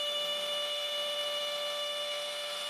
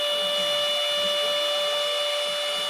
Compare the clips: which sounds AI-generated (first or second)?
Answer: first